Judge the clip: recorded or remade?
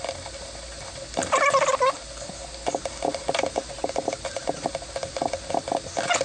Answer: recorded